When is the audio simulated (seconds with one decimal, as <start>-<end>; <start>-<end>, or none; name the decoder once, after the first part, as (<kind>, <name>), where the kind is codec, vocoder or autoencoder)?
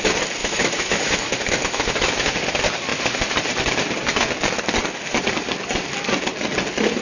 0.4-2.4 (autoencoder, DAC-VAE)